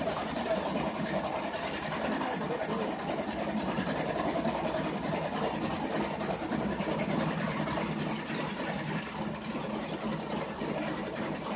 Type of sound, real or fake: real